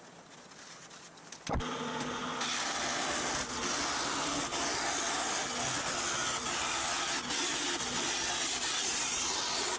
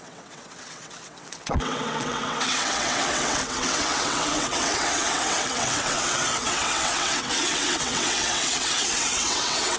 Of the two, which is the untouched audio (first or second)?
first